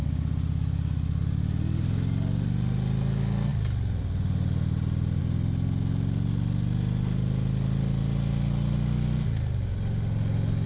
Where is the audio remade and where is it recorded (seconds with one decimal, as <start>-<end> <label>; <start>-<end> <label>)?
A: 0.0-10.7 recorded